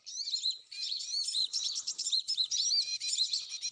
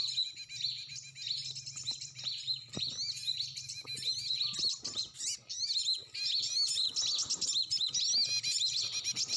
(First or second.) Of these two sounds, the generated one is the first